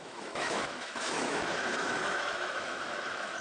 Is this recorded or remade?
remade